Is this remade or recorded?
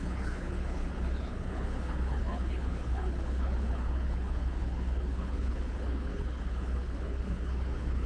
remade